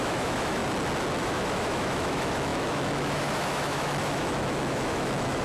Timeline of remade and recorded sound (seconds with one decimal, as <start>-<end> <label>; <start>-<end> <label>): 0.0-0.6 remade; 0.6-1.2 recorded; 1.2-5.4 remade